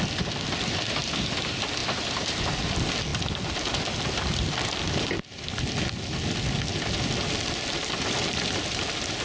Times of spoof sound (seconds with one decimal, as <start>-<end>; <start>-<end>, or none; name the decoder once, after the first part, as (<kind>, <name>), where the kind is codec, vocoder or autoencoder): 1.8-2.4 (vocoder, BigVGAN v2)